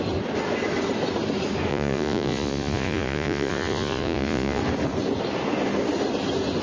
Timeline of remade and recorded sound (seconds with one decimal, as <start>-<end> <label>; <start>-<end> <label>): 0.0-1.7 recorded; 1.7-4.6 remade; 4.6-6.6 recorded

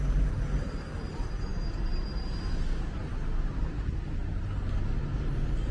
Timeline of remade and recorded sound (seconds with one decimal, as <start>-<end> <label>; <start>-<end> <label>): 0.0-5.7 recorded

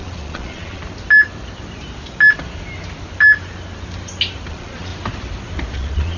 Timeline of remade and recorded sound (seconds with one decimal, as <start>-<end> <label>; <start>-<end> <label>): 0.0-0.8 remade; 0.8-4.5 recorded; 4.5-4.9 remade; 4.9-5.7 recorded; 5.7-6.2 remade

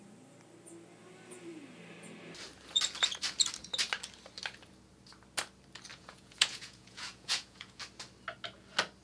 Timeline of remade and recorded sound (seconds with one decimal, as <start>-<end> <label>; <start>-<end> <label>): 0.0-5.9 recorded; 5.9-7.8 remade; 7.8-9.0 recorded

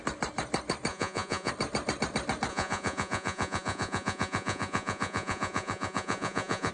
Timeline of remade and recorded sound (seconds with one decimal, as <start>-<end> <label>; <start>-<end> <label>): 0.0-0.9 recorded; 0.9-1.5 remade; 1.5-2.5 recorded; 2.5-6.7 remade

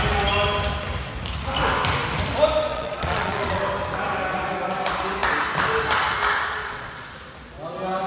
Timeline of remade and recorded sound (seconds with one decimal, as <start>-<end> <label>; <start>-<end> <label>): 0.0-2.7 recorded; 2.7-3.6 remade; 3.6-6.6 recorded; 6.6-7.1 remade; 7.1-8.1 recorded

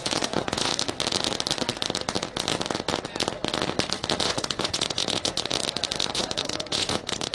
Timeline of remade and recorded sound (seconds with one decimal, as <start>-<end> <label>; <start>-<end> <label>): 0.0-0.7 remade; 0.7-4.2 recorded; 4.2-5.5 remade; 5.5-6.1 recorded; 6.1-7.3 remade

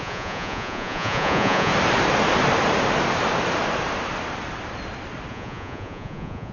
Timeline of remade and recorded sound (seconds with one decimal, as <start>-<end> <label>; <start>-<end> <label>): 0.0-1.7 remade; 1.7-5.3 recorded; 5.3-6.5 remade